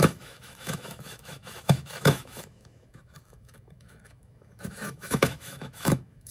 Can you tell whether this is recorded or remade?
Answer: remade